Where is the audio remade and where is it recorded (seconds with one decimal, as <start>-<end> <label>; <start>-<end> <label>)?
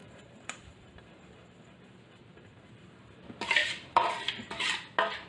0.0-3.2 remade; 3.2-3.6 recorded; 3.6-4.3 remade; 4.3-5.3 recorded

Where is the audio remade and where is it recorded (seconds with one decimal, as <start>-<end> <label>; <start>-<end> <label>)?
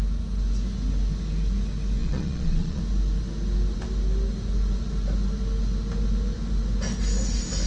0.0-2.0 recorded; 2.0-2.8 remade; 2.8-7.7 recorded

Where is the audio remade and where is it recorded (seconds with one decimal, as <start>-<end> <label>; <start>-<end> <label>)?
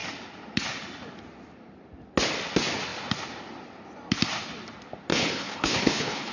0.0-5.1 recorded; 5.1-6.3 remade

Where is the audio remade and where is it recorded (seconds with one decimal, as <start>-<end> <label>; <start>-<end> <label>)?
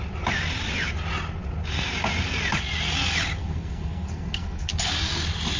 0.0-3.4 recorded; 3.4-4.7 remade; 4.7-5.6 recorded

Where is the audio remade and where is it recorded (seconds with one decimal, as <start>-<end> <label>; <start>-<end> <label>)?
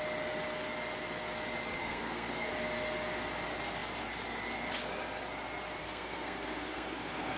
0.0-1.8 recorded; 1.8-2.5 remade; 2.5-5.8 recorded; 5.8-7.4 remade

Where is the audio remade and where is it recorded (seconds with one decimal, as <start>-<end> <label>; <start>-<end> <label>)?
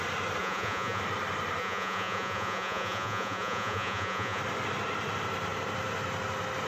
0.0-0.4 recorded; 0.4-1.0 remade; 1.0-1.6 recorded; 1.6-4.4 remade; 4.4-6.7 recorded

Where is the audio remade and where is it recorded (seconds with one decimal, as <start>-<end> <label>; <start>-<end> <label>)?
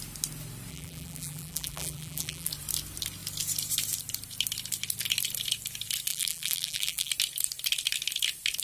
0.0-0.7 recorded; 0.7-2.5 remade; 2.5-6.1 recorded; 6.1-7.1 remade; 7.1-8.6 recorded